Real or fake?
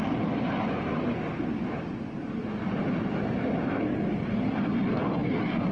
real